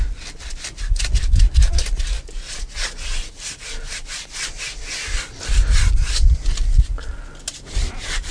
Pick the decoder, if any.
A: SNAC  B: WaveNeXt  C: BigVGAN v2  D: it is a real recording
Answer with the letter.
D